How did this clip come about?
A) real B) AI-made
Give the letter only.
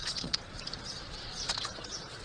B